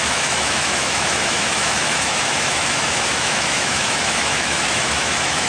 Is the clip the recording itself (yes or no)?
no